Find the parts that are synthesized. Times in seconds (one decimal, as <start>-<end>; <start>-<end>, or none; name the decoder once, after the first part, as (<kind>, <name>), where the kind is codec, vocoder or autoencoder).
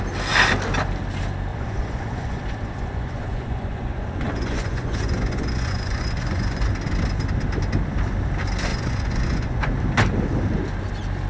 1.5-6.7 (vocoder, Vocos); 8.7-9.7